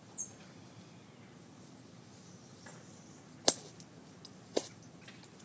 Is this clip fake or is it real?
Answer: real